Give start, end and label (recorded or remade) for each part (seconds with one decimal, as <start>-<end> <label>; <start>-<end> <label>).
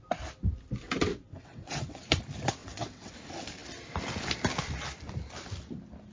0.0-1.1 recorded; 1.1-2.2 remade; 2.2-2.6 recorded; 2.6-3.1 remade; 3.1-6.1 recorded